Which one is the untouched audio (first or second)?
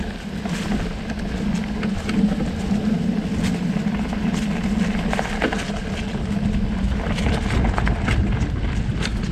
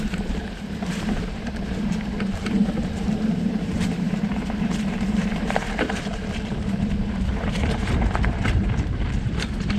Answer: first